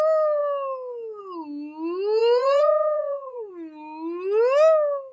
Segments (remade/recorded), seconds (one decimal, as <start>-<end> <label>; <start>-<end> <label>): 0.0-2.2 recorded; 2.2-3.5 remade; 3.5-5.1 recorded